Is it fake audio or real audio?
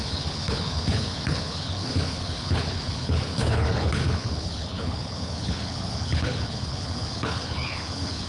fake